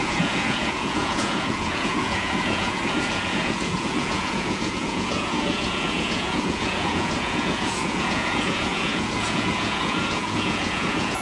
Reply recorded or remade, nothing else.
remade